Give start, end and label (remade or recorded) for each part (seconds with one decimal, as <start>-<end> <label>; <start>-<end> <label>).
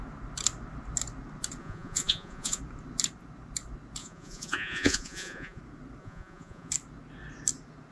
0.0-1.6 recorded; 1.6-2.6 remade; 2.6-4.0 recorded; 4.0-5.6 remade; 5.6-6.0 recorded; 6.0-6.7 remade; 6.7-7.9 recorded